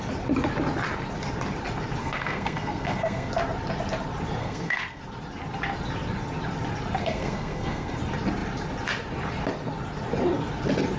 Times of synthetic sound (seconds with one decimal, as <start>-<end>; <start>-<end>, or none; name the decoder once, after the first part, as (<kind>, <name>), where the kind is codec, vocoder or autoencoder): 2.0-3.3 (codec, SNAC); 4.4-5.0; 7.0-8.0